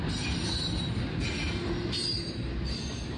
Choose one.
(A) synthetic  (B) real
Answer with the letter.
B